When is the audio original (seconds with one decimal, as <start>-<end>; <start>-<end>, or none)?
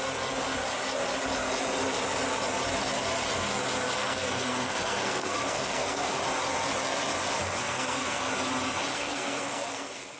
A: 0.0-4.0; 6.2-7.6; 8.3-8.9